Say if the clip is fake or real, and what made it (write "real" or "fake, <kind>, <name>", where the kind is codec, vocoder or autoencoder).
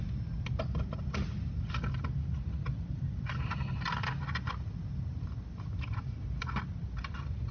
real